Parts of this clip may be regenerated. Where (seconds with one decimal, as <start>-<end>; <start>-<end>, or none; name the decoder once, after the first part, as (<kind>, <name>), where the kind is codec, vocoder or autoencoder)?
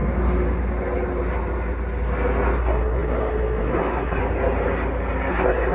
2.6-4.2 (codec, SNAC); 5.3-5.7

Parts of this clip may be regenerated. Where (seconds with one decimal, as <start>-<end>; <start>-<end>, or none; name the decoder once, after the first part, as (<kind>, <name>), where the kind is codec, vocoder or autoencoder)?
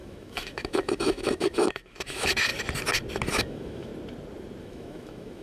0.0-2.5 (autoencoder, DAC-VAE); 3.3-3.9; 4.6-5.4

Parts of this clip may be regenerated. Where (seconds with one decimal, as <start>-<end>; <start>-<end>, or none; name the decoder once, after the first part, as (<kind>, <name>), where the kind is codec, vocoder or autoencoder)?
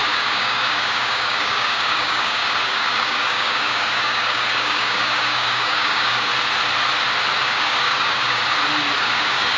0.0-6.3 (codec, DAC); 7.4-8.4; 9.0-9.6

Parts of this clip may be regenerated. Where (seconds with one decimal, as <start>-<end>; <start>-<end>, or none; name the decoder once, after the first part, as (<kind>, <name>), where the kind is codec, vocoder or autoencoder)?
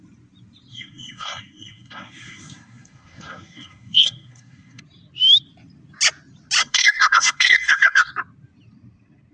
0.7-4.8 (codec, SNAC); 6.6-8.1